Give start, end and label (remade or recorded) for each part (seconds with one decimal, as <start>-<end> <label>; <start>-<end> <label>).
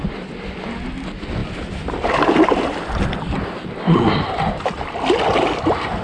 0.0-6.0 recorded